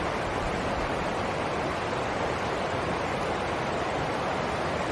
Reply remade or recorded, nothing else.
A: recorded